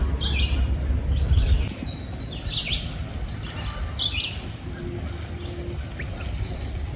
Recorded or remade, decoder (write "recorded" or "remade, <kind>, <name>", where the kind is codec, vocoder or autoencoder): recorded